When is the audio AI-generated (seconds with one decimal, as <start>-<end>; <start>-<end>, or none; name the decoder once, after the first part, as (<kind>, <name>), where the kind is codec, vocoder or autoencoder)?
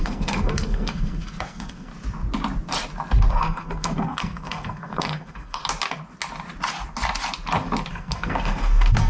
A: 0.0-1.9 (codec, SNAC); 3.3-5.6; 7.9-9.1